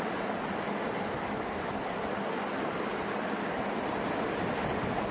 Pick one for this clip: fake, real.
real